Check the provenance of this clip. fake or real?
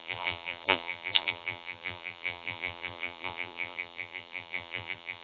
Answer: fake